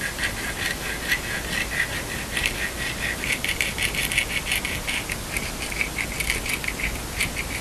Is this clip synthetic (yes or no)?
no